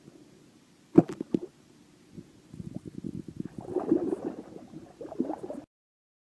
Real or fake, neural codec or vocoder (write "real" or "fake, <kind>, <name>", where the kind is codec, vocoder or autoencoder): real